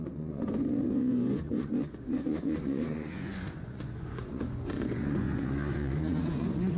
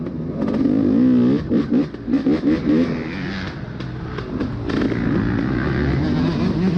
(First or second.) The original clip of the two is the second